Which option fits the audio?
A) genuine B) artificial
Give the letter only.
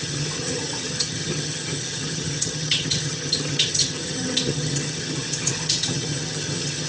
B